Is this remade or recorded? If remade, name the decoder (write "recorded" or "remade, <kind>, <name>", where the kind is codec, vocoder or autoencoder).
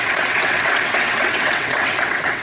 remade, vocoder, WaveNeXt